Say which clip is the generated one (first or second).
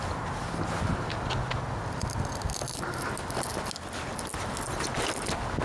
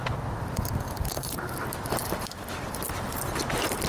second